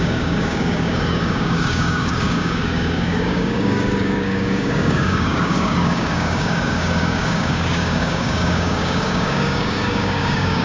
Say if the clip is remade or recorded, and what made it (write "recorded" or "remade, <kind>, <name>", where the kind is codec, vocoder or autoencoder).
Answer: remade, codec, DAC